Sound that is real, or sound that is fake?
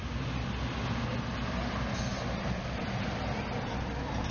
real